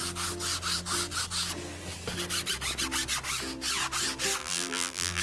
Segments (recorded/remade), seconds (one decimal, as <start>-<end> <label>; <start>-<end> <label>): 0.0-4.4 recorded; 4.4-5.2 remade